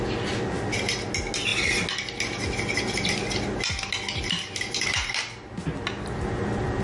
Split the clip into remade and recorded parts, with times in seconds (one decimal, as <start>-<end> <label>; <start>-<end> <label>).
0.0-6.8 recorded